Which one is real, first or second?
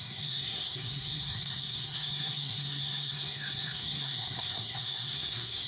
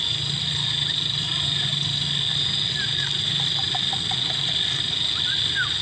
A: second